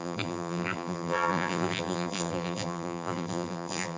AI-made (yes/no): yes